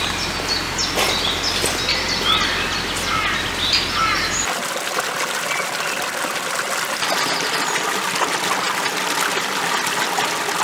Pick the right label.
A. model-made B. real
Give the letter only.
B